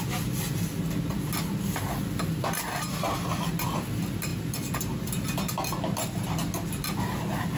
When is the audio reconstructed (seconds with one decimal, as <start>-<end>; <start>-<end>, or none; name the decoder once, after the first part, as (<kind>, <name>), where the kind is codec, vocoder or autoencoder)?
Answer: none

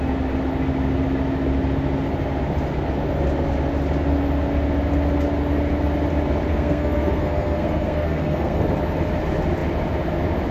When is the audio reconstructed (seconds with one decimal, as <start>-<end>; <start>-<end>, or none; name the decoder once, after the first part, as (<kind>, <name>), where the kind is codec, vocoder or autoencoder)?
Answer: 6.5-8.6 (codec, SNAC)

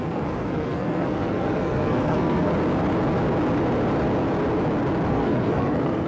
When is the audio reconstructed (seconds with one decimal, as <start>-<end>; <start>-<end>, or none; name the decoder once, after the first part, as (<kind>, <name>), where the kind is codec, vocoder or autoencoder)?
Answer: 0.0-2.5 (codec, SNAC); 5.1-6.1